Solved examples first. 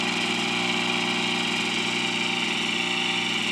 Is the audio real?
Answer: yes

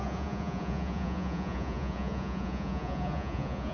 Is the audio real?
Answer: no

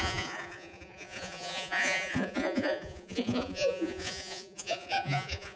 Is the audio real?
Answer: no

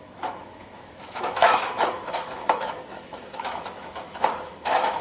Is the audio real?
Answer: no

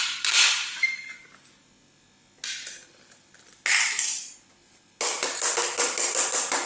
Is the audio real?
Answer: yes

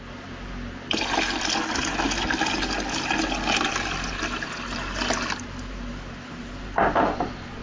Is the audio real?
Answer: yes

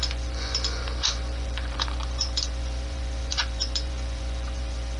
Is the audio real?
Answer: no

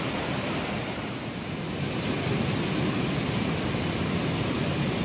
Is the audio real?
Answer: yes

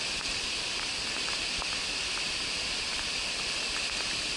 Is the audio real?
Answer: yes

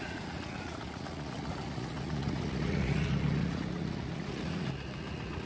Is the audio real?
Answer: no